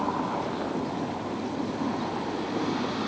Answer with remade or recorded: recorded